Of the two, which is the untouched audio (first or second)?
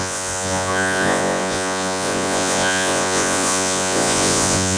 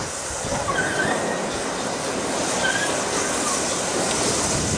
second